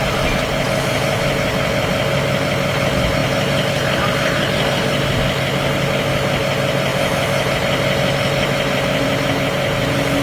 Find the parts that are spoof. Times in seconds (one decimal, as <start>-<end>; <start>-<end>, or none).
6.9-7.5